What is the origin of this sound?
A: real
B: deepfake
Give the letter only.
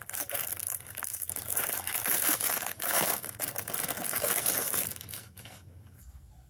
B